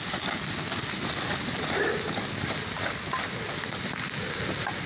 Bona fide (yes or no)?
yes